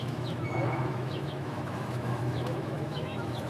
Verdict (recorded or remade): remade